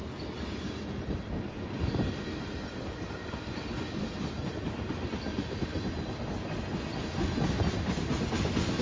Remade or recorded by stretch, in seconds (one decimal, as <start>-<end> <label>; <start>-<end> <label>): 0.0-5.3 recorded; 5.3-6.2 remade; 6.2-8.8 recorded

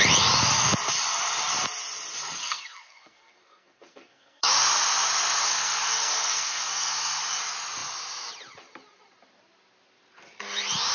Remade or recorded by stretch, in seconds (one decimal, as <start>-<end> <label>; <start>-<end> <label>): 0.0-2.4 recorded; 2.4-4.5 remade; 4.5-5.4 recorded; 5.4-7.2 remade; 7.2-10.9 recorded